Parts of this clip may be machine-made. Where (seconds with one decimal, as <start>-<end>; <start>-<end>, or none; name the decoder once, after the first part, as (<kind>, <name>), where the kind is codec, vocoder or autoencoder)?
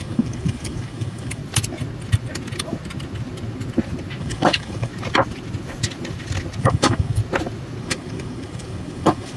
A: 0.0-1.4 (codec, DAC); 4.2-4.9; 6.6-7.2; 7.8-9.4